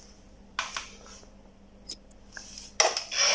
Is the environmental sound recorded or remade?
recorded